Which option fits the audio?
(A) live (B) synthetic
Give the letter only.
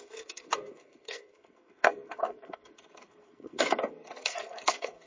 B